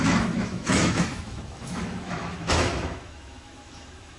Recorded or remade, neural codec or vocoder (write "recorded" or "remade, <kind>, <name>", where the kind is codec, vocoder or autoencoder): remade, autoencoder, DAC-VAE